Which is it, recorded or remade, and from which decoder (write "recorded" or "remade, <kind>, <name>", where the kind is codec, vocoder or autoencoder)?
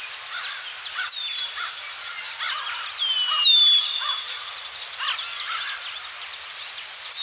recorded